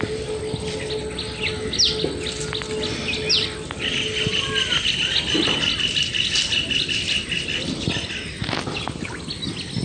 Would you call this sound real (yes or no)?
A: yes